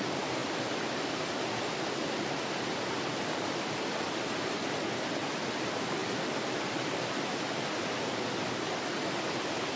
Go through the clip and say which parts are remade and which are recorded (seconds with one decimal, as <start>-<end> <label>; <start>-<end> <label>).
0.0-9.8 recorded